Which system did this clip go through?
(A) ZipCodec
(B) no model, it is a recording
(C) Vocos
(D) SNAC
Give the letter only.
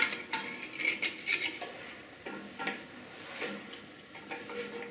B